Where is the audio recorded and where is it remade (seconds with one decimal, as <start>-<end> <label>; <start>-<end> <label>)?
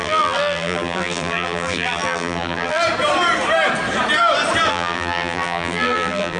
0.0-2.8 remade; 2.8-4.7 recorded; 4.7-6.4 remade